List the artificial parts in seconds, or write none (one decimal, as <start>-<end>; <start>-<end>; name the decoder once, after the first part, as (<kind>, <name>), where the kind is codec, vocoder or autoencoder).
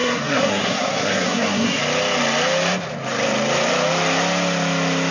0.0-1.8 (codec, SNAC)